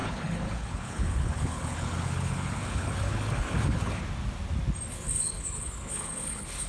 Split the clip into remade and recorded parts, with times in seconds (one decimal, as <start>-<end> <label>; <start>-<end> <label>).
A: 0.0-4.0 remade; 4.0-4.9 recorded; 4.9-6.7 remade